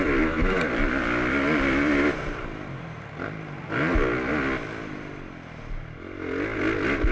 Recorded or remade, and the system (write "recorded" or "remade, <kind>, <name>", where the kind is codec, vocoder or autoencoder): recorded